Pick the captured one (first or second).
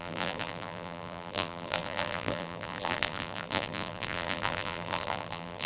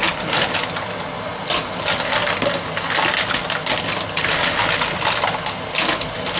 second